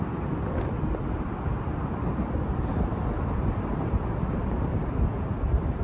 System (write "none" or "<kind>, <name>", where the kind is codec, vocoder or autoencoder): vocoder, BigVGAN v2